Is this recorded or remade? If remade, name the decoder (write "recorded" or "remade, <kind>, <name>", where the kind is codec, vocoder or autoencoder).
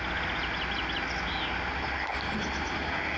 recorded